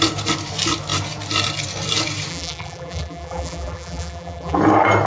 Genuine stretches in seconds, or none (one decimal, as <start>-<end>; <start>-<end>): 0.0-2.3; 4.6-5.1